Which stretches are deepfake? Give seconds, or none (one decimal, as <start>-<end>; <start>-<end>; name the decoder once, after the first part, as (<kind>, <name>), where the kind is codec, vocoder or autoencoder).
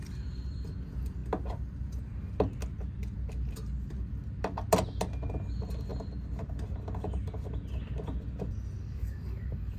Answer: 8.8-9.8 (codec, DAC)